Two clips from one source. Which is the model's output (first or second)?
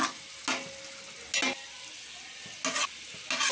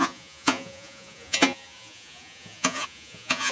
second